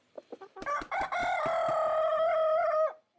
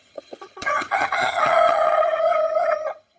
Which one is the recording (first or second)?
first